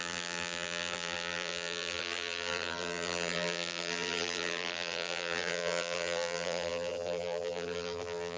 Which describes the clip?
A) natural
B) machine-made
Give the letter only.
B